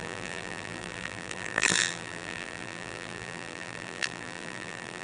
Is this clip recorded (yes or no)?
no